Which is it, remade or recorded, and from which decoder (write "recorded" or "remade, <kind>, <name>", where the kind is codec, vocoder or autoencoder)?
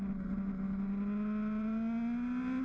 recorded